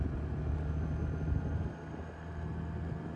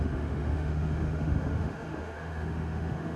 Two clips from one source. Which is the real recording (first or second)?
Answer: first